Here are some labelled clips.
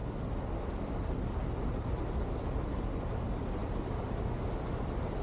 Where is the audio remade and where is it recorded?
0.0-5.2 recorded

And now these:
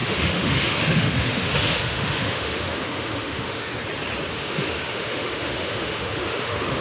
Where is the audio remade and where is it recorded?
0.0-3.7 remade; 3.7-4.3 recorded; 4.3-6.8 remade

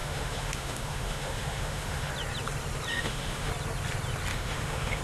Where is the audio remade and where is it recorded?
0.0-2.1 remade; 2.1-2.9 recorded; 2.9-3.5 remade; 3.5-4.3 recorded; 4.3-5.0 remade

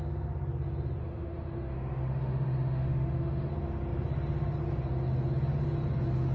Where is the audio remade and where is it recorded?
0.0-1.0 recorded; 1.0-3.5 remade; 3.5-6.3 recorded